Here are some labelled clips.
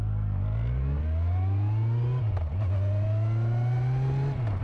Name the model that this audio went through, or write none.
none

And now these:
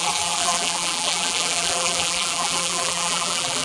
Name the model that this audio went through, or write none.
vocoder, BigVGAN v2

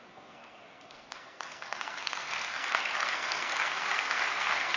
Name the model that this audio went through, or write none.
codec, SNAC